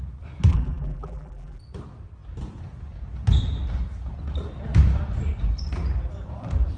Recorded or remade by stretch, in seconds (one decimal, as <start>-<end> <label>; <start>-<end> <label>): 0.0-0.5 recorded; 0.5-1.6 remade; 1.6-6.8 recorded